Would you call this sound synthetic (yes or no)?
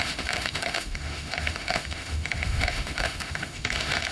yes